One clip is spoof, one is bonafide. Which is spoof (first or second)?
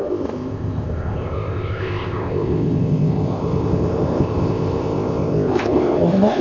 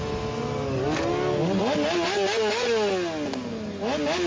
first